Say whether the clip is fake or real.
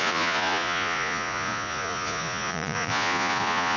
fake